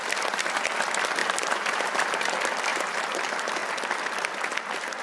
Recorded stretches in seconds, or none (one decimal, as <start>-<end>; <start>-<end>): 0.0-1.2; 2.3-2.7; 3.2-5.0